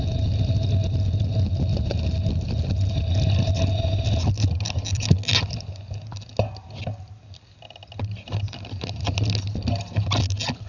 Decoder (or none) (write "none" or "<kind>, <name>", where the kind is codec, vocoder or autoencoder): none